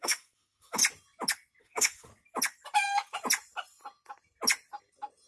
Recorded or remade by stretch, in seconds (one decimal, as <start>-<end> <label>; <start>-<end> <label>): 0.0-0.8 remade; 0.8-1.6 recorded; 1.6-2.1 remade; 2.1-5.3 recorded